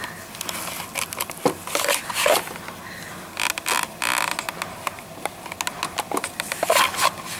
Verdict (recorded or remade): recorded